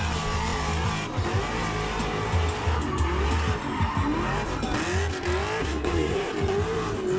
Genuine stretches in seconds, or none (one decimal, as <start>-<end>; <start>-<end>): 0.0-5.6; 6.3-7.2